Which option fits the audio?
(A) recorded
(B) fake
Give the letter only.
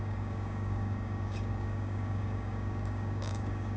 B